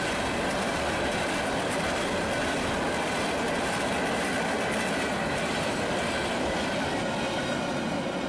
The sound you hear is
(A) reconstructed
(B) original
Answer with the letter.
B